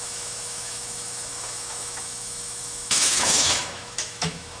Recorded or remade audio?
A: remade